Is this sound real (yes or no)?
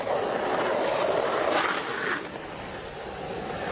yes